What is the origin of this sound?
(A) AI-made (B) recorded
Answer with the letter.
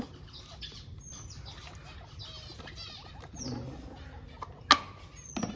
B